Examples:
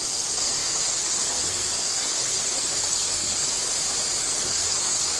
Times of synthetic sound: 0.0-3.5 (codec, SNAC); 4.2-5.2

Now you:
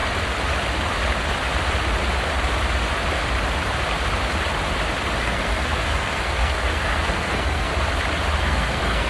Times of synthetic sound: 5.2-7.7 (codec, SNAC); 8.4-9.1

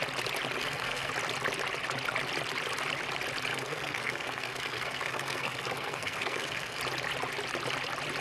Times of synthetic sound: 0.6-1.1 (codec, SNAC); 3.5-6.8